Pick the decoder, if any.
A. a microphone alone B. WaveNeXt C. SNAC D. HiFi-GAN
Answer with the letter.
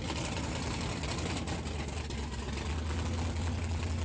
A